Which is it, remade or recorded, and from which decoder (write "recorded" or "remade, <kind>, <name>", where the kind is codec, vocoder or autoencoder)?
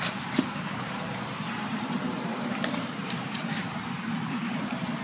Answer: remade, vocoder, BigVGAN v2